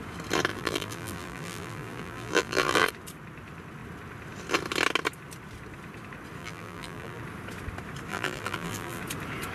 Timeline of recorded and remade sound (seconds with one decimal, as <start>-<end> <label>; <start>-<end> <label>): 0.0-0.5 recorded; 0.5-2.9 remade; 2.9-6.4 recorded; 6.4-7.2 remade; 7.2-8.1 recorded; 8.1-9.0 remade; 9.0-9.5 recorded